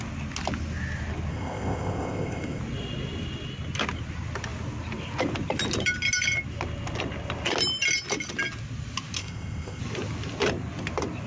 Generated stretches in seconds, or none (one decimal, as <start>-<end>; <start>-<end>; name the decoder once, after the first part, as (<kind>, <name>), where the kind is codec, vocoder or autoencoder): 1.3-2.6 (codec, ZipCodec); 9.2-9.8